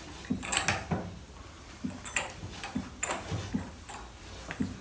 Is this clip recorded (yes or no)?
yes